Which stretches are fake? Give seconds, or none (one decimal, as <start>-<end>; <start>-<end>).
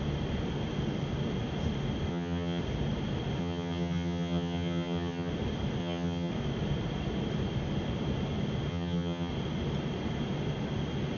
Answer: 2.1-2.6; 3.4-5.3; 5.8-6.3; 8.7-9.3